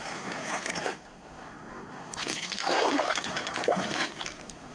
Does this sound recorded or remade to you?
remade